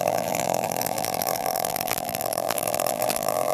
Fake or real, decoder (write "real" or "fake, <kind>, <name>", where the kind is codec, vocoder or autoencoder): fake, vocoder, BigVGAN v2